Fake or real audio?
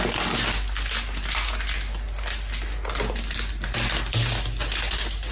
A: real